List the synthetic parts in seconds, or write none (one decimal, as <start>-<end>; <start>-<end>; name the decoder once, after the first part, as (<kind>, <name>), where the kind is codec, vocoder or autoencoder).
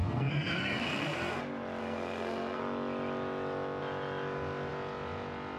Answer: 0.0-1.4 (codec, SNAC); 1.8-2.6